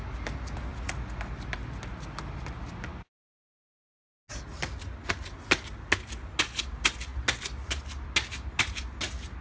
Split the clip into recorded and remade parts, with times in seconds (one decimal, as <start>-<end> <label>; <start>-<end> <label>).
0.0-9.4 recorded